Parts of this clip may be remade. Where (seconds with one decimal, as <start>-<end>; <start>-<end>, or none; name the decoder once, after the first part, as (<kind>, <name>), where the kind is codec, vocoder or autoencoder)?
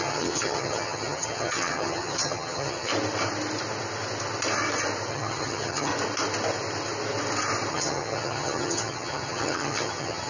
0.0-2.9 (vocoder, HiFi-GAN); 5.1-5.9; 7.7-10.3